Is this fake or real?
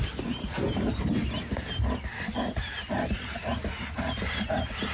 real